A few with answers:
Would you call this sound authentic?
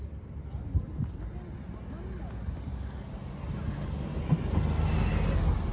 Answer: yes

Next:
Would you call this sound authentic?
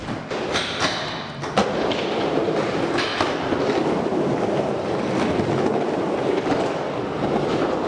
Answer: yes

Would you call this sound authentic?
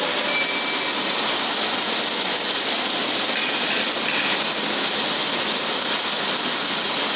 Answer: yes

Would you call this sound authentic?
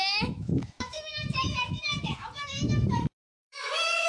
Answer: no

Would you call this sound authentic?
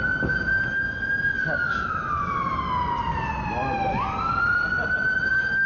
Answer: yes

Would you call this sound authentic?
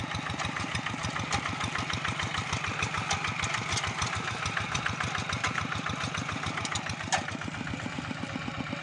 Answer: no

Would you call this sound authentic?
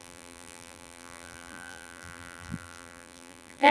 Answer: no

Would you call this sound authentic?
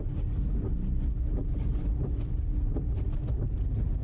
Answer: no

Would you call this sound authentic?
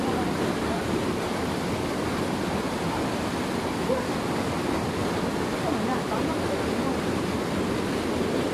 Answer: yes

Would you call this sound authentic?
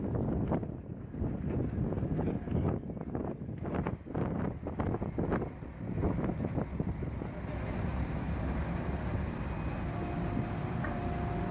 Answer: yes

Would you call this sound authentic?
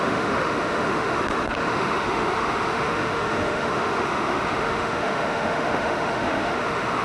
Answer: no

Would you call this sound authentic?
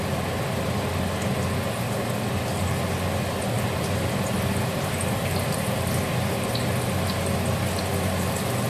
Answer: yes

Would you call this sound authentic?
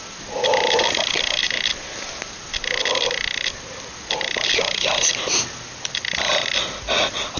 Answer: yes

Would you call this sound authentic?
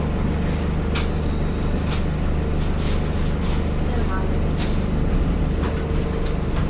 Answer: yes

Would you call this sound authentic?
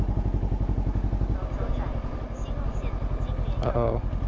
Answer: yes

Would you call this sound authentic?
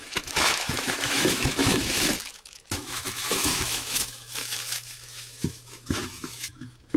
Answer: no